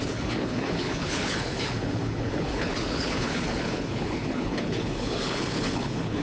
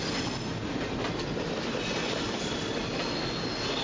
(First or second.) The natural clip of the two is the second